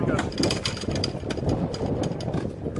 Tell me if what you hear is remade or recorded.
recorded